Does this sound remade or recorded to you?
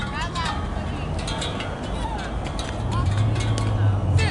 recorded